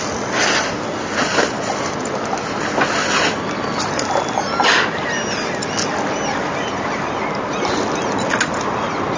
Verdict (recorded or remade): recorded